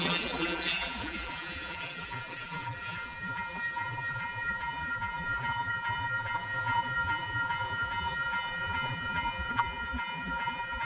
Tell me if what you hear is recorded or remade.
remade